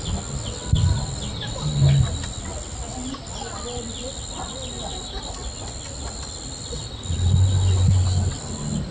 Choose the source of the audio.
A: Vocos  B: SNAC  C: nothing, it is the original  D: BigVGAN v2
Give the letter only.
C